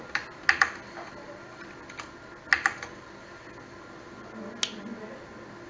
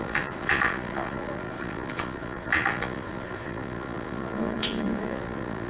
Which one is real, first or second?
first